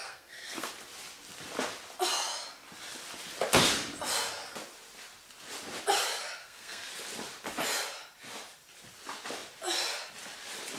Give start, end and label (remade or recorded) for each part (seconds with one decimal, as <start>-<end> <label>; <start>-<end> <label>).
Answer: 0.0-0.7 remade; 0.7-6.4 recorded; 6.4-6.9 remade; 6.9-10.8 recorded